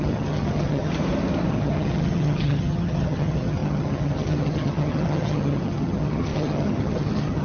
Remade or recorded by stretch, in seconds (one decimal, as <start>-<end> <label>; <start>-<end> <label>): 0.0-0.9 remade; 0.9-1.5 recorded; 1.5-7.4 remade